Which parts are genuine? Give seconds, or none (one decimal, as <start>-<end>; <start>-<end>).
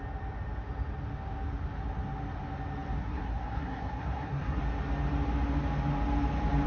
0.0-3.0; 4.6-6.7